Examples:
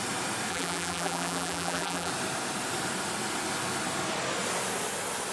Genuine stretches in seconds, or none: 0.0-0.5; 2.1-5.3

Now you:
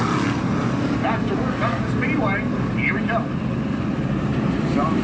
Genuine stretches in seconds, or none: 0.0-5.0

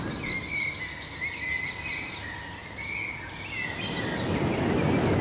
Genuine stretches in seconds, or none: 0.0-5.2

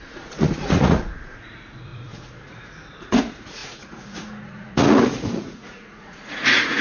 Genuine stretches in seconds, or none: none

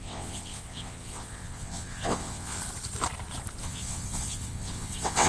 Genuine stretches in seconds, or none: 2.6-3.6

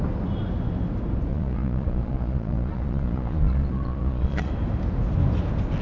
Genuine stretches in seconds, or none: 0.0-1.3; 4.5-5.8